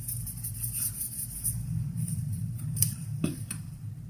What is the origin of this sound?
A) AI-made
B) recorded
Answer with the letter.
A